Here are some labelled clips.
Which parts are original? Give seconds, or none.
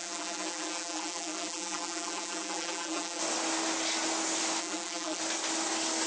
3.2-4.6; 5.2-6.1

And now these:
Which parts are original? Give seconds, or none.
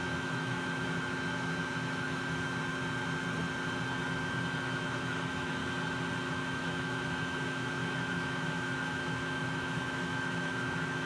2.7-4.6; 5.6-6.3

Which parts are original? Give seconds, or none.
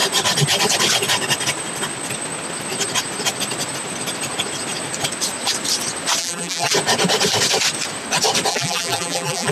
0.0-6.2; 6.7-8.5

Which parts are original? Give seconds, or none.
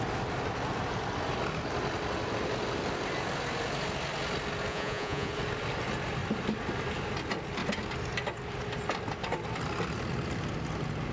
0.0-4.7; 5.3-11.1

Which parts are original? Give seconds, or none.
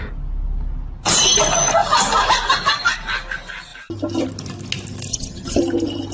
0.0-5.1; 5.6-6.1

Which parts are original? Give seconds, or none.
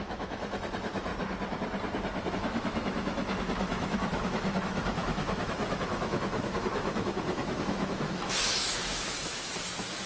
1.1-2.3